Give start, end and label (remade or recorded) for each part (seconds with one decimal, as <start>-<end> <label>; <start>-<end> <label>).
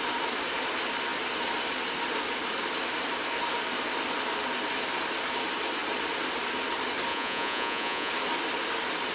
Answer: 0.0-7.1 recorded; 7.1-8.1 remade; 8.1-9.1 recorded